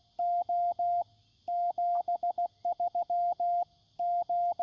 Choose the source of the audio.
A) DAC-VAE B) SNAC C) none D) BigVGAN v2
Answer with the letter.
C